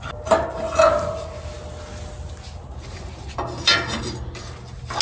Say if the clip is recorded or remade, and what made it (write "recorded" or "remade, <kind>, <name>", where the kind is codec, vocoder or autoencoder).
recorded